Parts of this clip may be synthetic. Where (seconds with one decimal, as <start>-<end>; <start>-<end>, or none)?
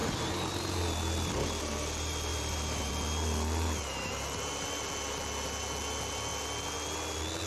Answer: 0.0-0.8; 2.3-2.9